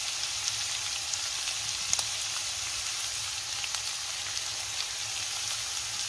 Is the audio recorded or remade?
recorded